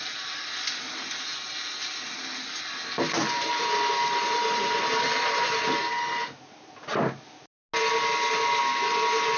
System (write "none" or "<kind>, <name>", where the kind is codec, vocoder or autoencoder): none